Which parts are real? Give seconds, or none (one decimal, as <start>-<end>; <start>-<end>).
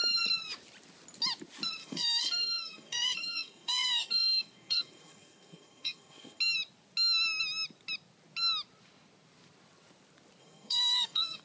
0.0-1.8; 6.4-10.4